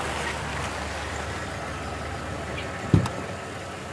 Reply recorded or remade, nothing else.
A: recorded